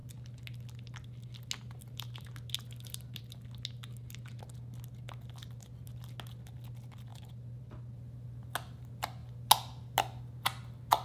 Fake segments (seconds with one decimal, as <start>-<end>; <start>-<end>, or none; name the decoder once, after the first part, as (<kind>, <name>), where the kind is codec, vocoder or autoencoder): none